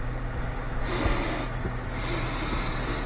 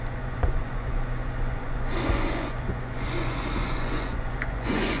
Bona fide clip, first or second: first